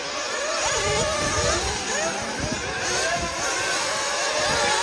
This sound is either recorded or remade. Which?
recorded